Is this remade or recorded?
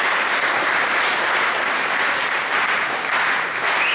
recorded